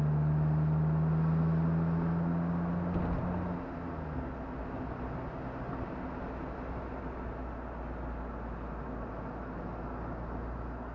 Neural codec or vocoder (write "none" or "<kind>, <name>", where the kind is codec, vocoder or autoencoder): none